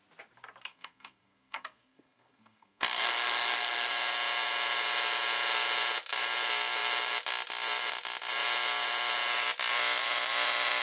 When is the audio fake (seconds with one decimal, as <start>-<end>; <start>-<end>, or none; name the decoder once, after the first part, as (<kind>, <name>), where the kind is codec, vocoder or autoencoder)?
0.7-3.9 (codec, SNAC)